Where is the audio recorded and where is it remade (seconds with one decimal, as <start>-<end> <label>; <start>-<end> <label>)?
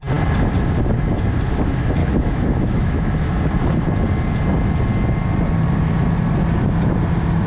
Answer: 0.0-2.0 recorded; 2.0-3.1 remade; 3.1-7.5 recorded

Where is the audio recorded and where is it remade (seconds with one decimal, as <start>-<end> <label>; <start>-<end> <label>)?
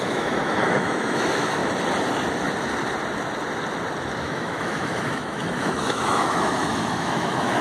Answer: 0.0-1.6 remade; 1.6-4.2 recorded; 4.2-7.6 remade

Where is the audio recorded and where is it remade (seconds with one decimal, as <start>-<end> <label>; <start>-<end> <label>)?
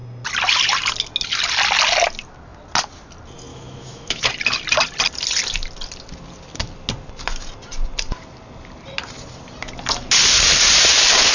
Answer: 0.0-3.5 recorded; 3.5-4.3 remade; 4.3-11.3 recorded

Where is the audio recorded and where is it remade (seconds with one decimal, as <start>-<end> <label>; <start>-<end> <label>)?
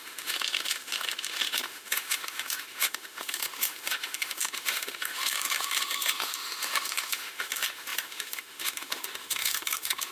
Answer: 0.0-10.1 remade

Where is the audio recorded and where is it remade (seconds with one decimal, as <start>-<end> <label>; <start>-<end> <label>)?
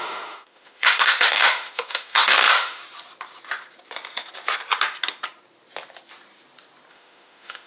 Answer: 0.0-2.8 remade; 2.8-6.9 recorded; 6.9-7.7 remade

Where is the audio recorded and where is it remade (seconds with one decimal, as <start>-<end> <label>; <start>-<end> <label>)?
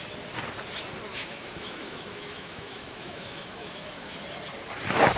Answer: 0.0-1.1 recorded; 1.1-4.2 remade; 4.2-5.2 recorded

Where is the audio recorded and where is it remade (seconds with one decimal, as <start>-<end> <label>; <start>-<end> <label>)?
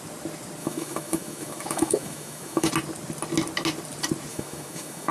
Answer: 0.0-0.6 recorded; 0.6-2.7 remade; 2.7-4.3 recorded; 4.3-5.1 remade